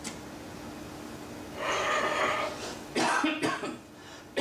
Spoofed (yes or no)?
no